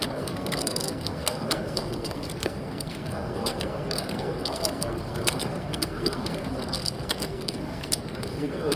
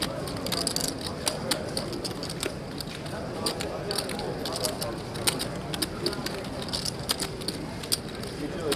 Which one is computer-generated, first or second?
first